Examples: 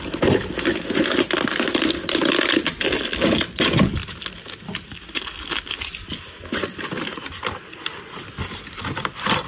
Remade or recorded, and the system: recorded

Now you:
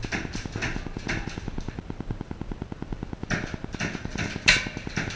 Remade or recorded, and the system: recorded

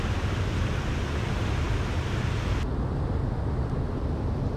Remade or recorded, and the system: recorded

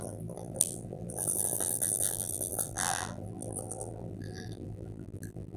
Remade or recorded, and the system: remade, vocoder, BigVGAN v2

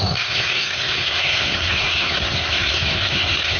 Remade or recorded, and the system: remade, codec, SNAC